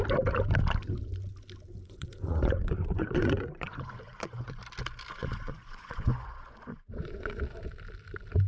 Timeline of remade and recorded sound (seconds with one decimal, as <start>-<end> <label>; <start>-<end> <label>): 0.0-1.8 recorded; 1.8-4.6 remade; 4.6-5.2 recorded; 5.2-7.4 remade; 7.4-8.5 recorded